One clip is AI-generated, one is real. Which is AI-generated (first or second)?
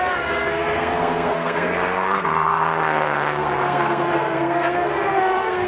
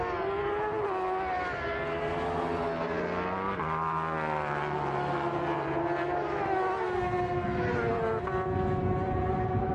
first